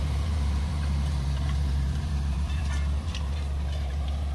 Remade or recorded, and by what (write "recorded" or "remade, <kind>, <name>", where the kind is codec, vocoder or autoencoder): remade, vocoder, BigVGAN v2